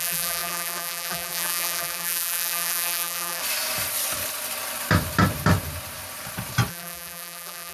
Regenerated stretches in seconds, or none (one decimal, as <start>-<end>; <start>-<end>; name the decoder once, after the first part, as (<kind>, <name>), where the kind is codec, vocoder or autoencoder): 0.0-3.4 (vocoder, BigVGAN v2); 6.7-7.7